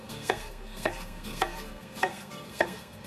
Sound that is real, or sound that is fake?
fake